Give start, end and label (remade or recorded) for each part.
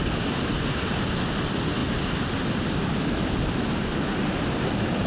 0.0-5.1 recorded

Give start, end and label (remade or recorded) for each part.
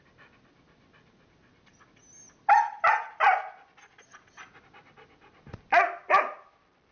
0.0-6.9 recorded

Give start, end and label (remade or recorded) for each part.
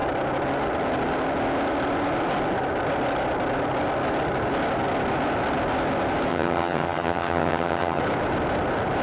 0.0-6.3 recorded; 6.3-8.0 remade; 8.0-9.0 recorded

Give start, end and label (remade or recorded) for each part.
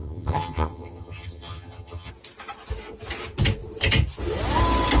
0.0-2.1 remade; 2.1-5.0 recorded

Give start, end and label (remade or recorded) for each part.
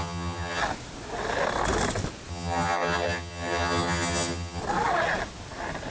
0.0-0.6 remade; 0.6-2.3 recorded; 2.3-4.6 remade; 4.6-5.9 recorded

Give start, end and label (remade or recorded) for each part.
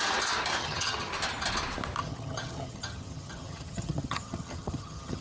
0.0-0.6 recorded; 0.6-1.1 remade; 1.1-2.0 recorded; 2.0-5.2 remade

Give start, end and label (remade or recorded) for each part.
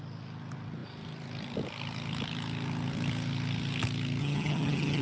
0.0-4.2 recorded; 4.2-5.0 remade